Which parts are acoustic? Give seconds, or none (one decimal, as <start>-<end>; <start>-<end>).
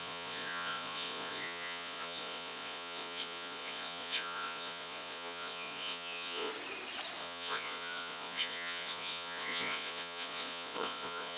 6.5-7.2